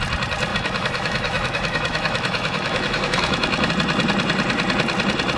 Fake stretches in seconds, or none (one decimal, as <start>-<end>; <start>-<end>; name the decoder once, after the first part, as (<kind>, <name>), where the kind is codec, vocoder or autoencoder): 0.5-3.7 (autoencoder, DAC-VAE)